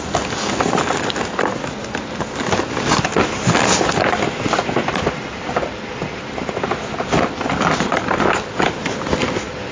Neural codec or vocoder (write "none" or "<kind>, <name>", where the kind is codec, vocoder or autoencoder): none